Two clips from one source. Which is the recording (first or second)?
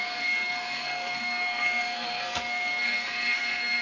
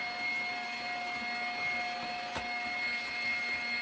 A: second